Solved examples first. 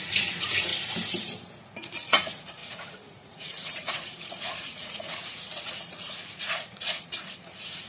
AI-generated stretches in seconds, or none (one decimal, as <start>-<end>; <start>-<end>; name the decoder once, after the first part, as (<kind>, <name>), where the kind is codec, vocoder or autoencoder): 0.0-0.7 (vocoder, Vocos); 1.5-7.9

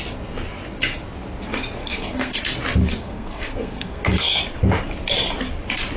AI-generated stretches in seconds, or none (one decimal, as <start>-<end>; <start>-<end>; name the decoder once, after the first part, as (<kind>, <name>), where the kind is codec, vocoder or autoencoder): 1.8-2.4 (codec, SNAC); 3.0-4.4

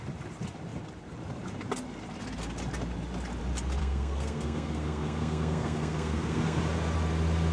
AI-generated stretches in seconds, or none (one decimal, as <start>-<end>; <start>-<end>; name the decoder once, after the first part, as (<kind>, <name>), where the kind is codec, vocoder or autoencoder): 3.8-6.6 (codec, SNAC)